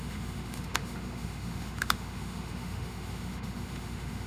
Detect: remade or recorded remade